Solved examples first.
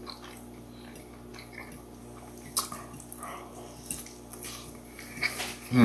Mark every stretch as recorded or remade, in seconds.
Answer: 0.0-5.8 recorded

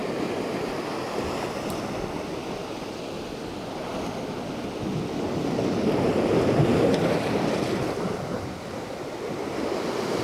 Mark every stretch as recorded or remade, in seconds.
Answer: 0.0-2.2 recorded; 2.2-2.6 remade; 2.6-5.9 recorded; 5.9-10.2 remade